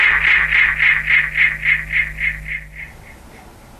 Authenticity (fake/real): real